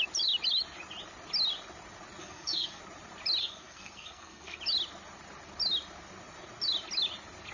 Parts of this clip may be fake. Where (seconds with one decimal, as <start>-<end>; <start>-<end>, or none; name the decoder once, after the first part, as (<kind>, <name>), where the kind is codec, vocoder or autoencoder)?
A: 2.2-2.8 (codec, SNAC); 3.4-4.6